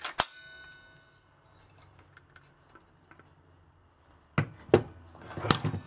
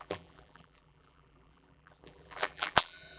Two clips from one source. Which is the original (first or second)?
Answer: first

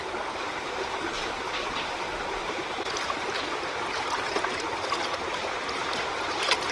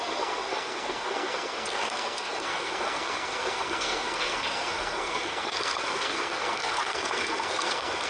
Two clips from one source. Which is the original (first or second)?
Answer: first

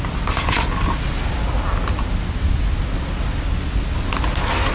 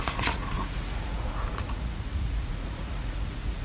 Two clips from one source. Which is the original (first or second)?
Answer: first